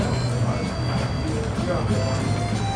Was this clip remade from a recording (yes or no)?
no